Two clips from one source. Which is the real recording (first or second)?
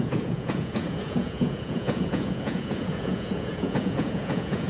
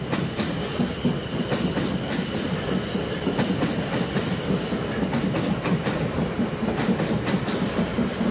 second